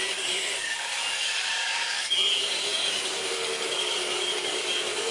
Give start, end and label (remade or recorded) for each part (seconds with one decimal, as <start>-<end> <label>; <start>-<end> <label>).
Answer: 0.0-5.1 remade